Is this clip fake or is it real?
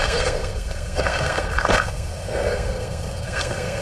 fake